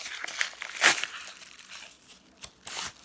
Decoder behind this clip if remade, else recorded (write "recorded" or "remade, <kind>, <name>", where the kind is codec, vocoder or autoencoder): recorded